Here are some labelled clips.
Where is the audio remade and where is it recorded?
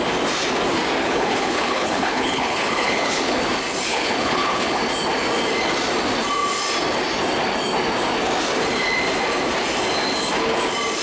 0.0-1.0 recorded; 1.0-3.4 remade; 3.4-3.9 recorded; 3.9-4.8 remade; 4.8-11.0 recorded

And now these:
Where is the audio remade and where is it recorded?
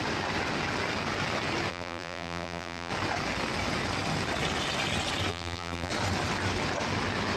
0.0-1.7 recorded; 1.7-2.9 remade; 2.9-5.3 recorded; 5.3-5.9 remade; 5.9-7.4 recorded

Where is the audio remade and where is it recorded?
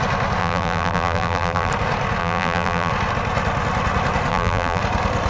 0.0-0.4 recorded; 0.4-1.7 remade; 1.7-2.2 recorded; 2.2-2.9 remade; 2.9-4.3 recorded; 4.3-4.8 remade; 4.8-5.3 recorded